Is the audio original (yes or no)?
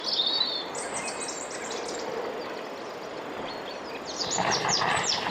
yes